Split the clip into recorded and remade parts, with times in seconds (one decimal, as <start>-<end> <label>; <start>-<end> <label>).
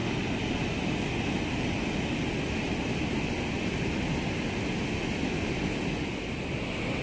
0.0-7.0 recorded